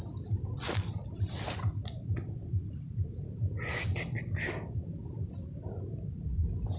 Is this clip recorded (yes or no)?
yes